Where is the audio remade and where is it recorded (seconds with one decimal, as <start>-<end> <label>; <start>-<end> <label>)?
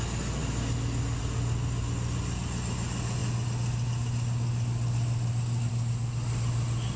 0.0-7.0 recorded